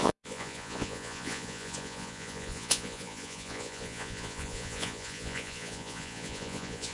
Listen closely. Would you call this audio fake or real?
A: fake